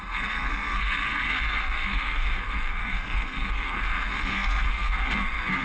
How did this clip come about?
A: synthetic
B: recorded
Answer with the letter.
A